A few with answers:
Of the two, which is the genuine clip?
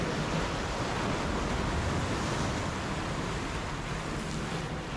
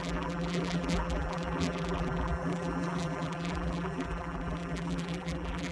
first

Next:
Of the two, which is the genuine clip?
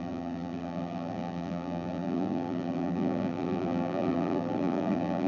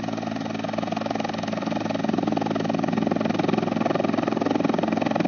second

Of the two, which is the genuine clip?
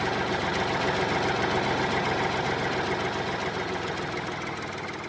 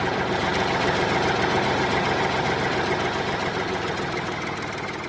first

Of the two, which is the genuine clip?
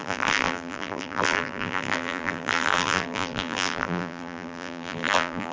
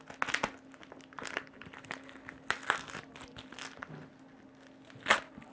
second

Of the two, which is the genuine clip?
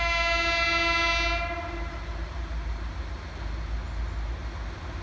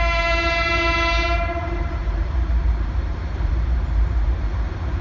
first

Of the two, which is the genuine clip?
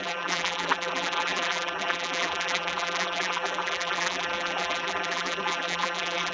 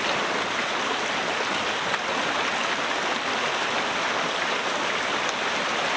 second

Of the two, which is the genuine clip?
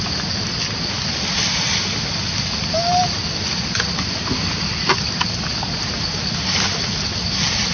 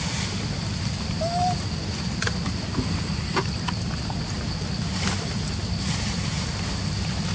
first